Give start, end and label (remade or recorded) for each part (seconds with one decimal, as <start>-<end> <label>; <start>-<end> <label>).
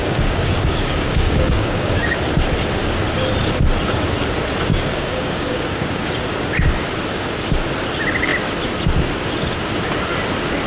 0.0-2.2 remade; 2.2-4.7 recorded; 4.7-6.1 remade; 6.1-10.7 recorded